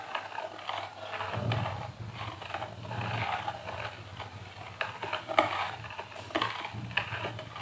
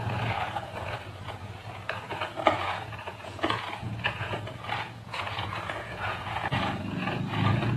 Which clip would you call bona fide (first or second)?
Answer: first